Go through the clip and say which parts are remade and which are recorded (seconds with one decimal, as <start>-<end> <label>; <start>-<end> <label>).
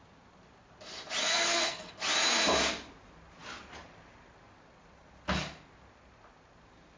0.0-1.2 recorded; 1.2-1.9 remade; 1.9-7.0 recorded